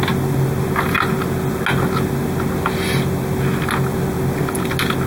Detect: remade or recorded recorded